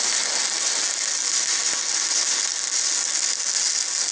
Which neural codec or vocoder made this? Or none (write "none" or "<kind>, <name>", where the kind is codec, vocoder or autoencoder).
none